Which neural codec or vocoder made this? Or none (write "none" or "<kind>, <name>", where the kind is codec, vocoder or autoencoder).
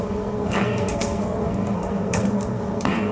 codec, SNAC